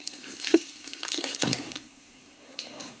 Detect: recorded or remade remade